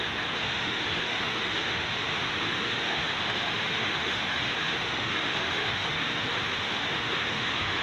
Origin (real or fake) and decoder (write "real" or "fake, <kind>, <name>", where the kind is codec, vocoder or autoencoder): fake, autoencoder, DAC-VAE